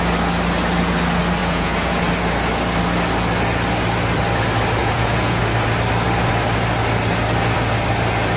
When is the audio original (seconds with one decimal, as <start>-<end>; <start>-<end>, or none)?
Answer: 0.0-1.4; 2.0-4.8; 5.4-8.4